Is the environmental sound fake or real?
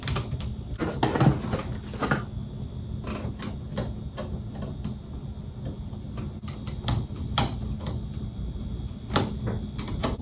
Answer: real